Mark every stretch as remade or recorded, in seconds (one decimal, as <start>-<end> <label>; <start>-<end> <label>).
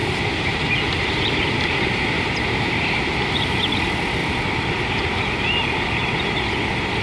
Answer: 0.0-3.7 remade; 3.7-4.2 recorded; 4.2-6.4 remade; 6.4-7.0 recorded